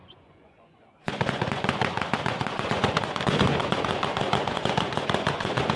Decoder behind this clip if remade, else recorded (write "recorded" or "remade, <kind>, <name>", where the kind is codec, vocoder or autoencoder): remade, vocoder, Vocos